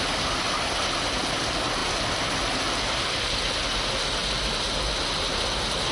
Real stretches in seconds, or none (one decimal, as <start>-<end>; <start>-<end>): 0.0-5.9